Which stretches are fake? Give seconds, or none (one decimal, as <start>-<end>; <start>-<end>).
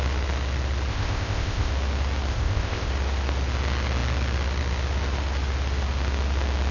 0.9-1.7; 2.3-2.9